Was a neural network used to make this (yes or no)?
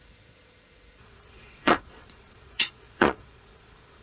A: yes